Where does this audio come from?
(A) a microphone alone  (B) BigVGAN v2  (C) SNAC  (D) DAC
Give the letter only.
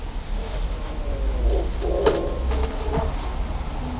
A